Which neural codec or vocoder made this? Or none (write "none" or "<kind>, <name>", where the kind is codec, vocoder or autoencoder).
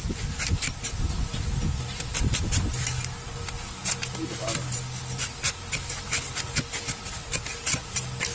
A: none